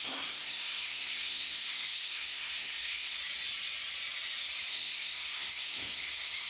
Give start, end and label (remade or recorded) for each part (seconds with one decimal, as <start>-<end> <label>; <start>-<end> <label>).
0.0-3.2 remade; 3.2-4.7 recorded; 4.7-6.5 remade